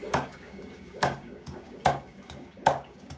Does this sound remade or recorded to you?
remade